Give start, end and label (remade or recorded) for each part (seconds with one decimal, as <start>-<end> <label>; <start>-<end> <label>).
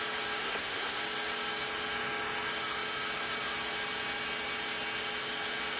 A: 0.0-0.4 recorded; 0.4-1.0 remade; 1.0-5.8 recorded